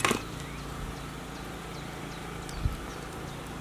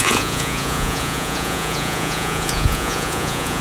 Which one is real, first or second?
first